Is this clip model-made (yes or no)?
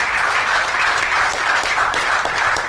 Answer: yes